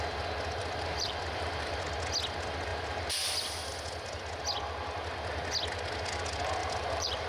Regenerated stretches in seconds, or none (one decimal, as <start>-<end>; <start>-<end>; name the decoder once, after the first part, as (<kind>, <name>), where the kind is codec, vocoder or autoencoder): 0.6-1.8 (vocoder, BigVGAN v2); 6.6-7.3